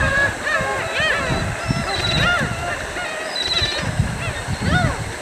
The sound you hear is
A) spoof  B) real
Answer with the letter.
B